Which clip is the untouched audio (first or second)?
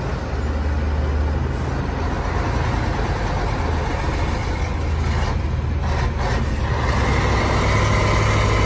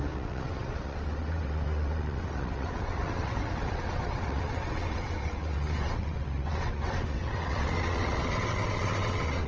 first